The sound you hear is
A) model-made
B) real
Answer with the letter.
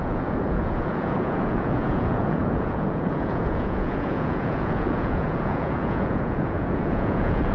A